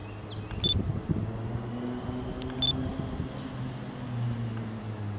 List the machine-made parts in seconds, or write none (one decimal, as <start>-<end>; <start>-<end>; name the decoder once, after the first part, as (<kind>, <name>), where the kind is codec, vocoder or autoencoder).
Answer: none